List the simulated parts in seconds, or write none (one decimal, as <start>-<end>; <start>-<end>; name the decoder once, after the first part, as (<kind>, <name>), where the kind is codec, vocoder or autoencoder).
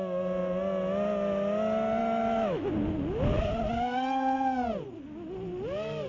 2.0-2.7 (autoencoder, DAC-VAE)